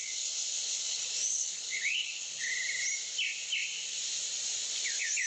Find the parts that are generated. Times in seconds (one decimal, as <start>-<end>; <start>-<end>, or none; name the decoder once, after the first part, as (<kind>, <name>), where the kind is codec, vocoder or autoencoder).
0.0-2.5 (codec, HILCodec)